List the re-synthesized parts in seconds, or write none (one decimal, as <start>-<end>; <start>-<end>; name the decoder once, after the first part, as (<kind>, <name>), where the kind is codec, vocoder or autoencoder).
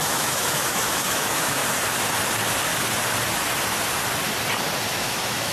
0.0-1.6 (autoencoder, DAC-VAE); 4.9-5.5